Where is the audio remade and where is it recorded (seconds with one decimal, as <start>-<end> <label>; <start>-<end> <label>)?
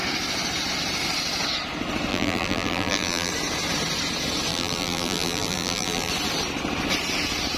0.0-2.1 recorded; 2.1-3.3 remade; 3.3-4.5 recorded; 4.5-6.1 remade; 6.1-7.6 recorded